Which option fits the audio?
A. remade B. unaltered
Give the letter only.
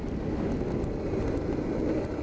B